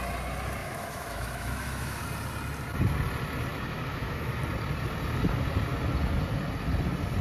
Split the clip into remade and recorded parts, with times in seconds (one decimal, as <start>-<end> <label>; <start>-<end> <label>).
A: 0.0-0.6 recorded; 0.6-2.0 remade; 2.0-3.5 recorded; 3.5-4.4 remade; 4.4-7.2 recorded